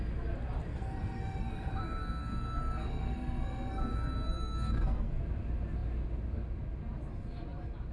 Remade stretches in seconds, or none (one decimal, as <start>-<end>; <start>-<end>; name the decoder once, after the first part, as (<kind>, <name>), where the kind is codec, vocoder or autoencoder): 0.7-5.2 (codec, SNAC)